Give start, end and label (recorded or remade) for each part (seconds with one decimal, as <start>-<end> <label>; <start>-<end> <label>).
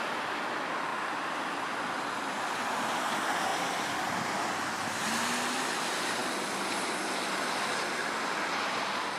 0.0-0.9 remade; 0.9-3.0 recorded; 3.0-3.5 remade; 3.5-5.8 recorded; 5.8-9.2 remade